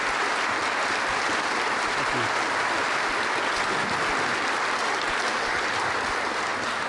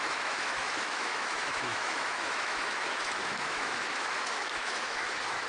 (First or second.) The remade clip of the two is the second